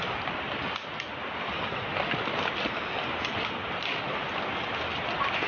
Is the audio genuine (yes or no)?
yes